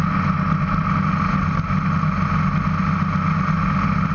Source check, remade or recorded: recorded